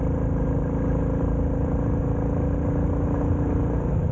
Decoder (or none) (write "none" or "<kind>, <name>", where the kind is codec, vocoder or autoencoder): none